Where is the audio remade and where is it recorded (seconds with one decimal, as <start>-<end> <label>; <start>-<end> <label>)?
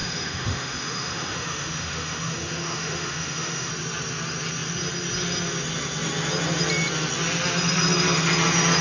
0.0-3.7 remade; 3.7-8.8 recorded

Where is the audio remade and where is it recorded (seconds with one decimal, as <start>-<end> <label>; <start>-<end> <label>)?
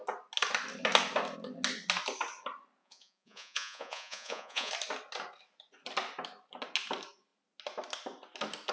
0.0-2.8 recorded; 2.8-4.7 remade; 4.7-8.7 recorded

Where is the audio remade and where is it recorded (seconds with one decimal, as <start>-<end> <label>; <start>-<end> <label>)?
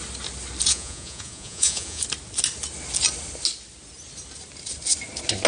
0.0-0.7 recorded; 0.7-2.0 remade; 2.0-5.5 recorded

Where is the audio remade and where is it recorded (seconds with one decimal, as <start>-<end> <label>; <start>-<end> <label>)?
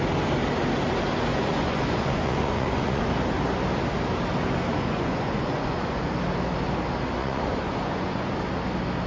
0.0-1.3 recorded; 1.3-3.0 remade; 3.0-4.7 recorded; 4.7-6.1 remade; 6.1-7.2 recorded; 7.2-8.3 remade; 8.3-9.1 recorded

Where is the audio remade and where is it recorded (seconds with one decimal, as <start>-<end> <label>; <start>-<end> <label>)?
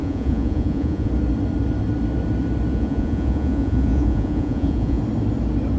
0.0-1.1 remade; 1.1-2.7 recorded; 2.7-5.0 remade; 5.0-5.8 recorded